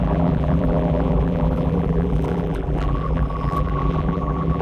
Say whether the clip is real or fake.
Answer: fake